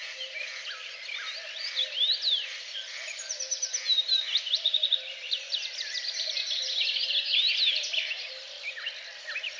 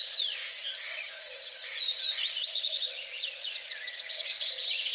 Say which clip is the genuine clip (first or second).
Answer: first